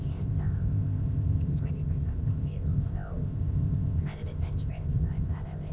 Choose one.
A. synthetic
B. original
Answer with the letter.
A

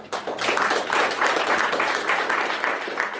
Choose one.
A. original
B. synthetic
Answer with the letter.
A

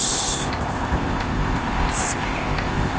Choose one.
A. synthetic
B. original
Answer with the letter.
A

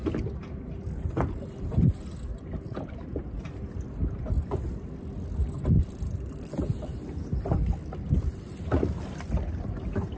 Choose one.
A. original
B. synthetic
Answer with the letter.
A